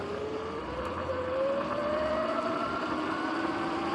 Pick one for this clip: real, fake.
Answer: real